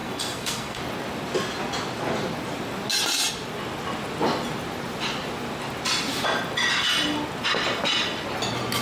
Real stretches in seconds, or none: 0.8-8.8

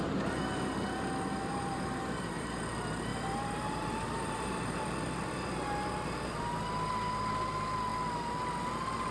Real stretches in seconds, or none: 0.0-1.4; 2.6-3.1; 4.8-9.1

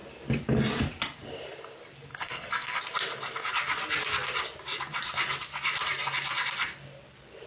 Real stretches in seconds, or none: 0.0-2.1; 2.8-7.5

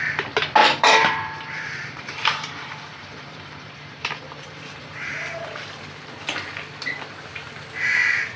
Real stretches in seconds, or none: 0.0-0.6; 5.1-8.4

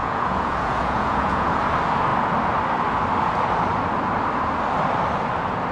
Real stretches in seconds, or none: 1.5-5.7

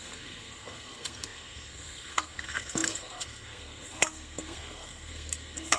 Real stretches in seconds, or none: none

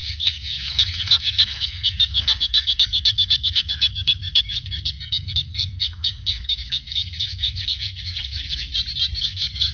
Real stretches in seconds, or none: 8.7-9.2

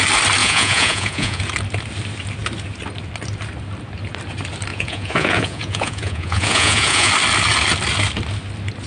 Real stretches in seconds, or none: 0.0-0.4; 1.4-4.7; 7.1-8.9